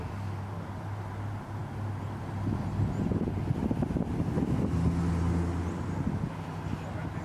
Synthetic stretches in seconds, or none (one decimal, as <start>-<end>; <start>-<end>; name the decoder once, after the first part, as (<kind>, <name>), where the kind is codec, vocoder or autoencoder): none